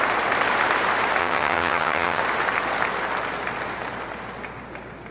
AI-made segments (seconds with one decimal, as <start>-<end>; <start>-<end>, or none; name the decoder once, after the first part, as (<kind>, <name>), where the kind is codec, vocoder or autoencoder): 1.2-2.2 (vocoder, HiFi-GAN)